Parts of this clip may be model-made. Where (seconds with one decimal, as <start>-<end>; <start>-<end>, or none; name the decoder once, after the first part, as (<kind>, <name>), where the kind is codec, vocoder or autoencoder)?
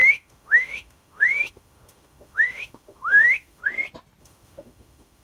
0.0-3.6 (autoencoder, DAC-VAE); 4.2-5.2